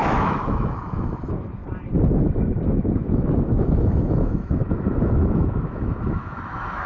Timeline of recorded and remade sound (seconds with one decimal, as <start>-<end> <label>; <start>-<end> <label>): 0.0-1.6 remade; 1.6-2.2 recorded; 2.2-6.9 remade